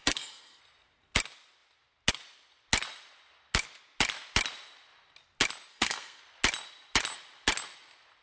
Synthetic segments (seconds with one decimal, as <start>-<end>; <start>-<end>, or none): 0.0-0.6; 5.7-6.2